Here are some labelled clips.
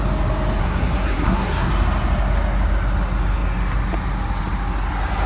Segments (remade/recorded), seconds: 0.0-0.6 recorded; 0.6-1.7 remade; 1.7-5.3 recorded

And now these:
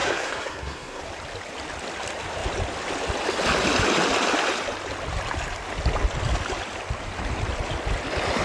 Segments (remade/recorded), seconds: 0.0-1.0 remade; 1.0-8.4 recorded

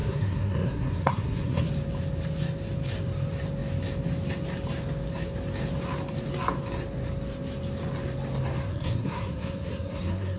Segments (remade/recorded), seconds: 0.0-1.7 remade; 1.7-8.7 recorded; 8.7-10.4 remade

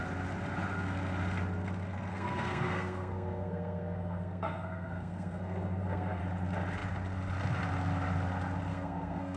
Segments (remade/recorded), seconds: 0.0-2.1 recorded; 2.1-6.2 remade; 6.2-8.7 recorded; 8.7-9.4 remade

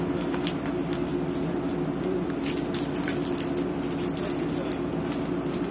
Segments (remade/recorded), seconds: 0.0-5.7 recorded

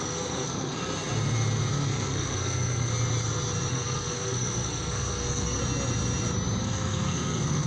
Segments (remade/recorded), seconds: 0.0-0.8 remade; 0.8-1.7 recorded; 1.7-2.9 remade; 2.9-3.7 recorded; 3.7-5.6 remade; 5.6-6.6 recorded; 6.6-7.7 remade